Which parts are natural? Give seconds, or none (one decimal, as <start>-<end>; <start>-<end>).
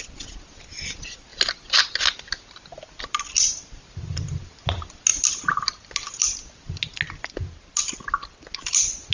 0.0-9.1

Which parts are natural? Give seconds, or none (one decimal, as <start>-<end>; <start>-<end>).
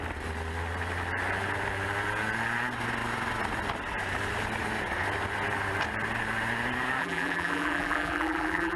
0.0-7.0